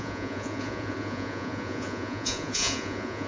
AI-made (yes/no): yes